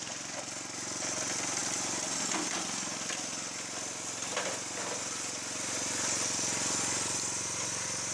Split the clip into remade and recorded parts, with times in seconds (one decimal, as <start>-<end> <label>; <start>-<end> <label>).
0.0-8.1 recorded